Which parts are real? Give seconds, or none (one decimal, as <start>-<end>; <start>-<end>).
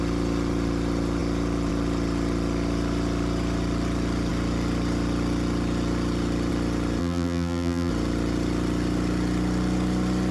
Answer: 0.0-7.0; 7.9-10.3